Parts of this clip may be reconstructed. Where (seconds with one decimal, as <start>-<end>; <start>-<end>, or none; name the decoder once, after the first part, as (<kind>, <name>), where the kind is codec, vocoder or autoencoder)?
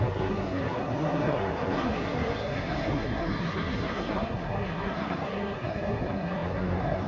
0.0-7.1 (codec, SNAC)